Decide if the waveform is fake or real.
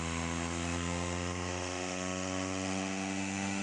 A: fake